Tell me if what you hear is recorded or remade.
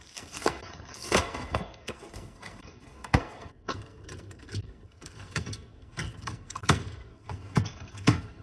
remade